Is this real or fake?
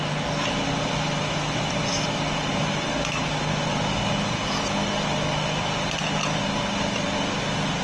real